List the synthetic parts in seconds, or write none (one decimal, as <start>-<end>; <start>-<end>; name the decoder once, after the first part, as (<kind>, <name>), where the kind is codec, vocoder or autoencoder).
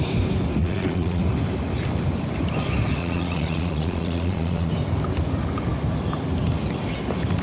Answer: 0.6-1.2 (vocoder, Vocos); 3.0-4.7